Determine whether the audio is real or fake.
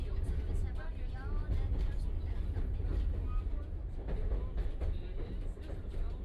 real